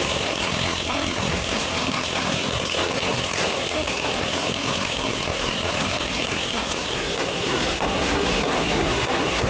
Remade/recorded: remade